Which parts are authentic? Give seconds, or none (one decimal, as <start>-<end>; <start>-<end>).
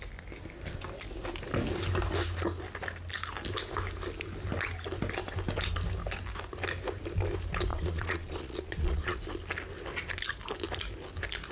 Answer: 0.0-7.7; 9.2-11.5